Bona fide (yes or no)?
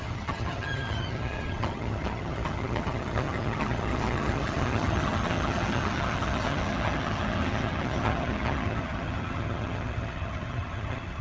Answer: no